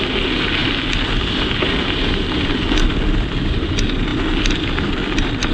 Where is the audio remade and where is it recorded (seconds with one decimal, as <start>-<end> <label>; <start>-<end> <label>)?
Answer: 0.0-0.6 recorded; 0.6-1.1 remade; 1.1-5.5 recorded